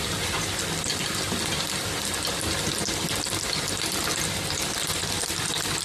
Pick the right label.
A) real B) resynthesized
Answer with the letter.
A